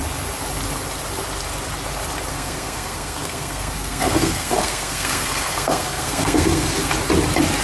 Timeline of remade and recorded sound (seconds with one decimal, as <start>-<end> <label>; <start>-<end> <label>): 0.0-2.3 recorded; 2.3-6.9 remade; 6.9-7.6 recorded